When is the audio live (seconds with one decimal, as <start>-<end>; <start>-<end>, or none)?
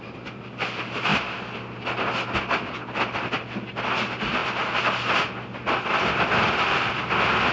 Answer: 0.0-7.5